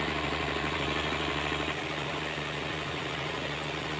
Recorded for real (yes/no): no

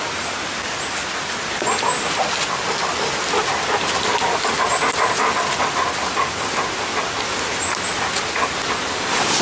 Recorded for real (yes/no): yes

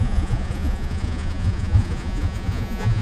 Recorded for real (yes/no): no